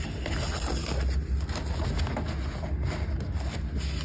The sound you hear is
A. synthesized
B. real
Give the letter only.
B